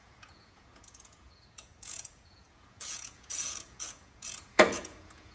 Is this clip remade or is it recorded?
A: remade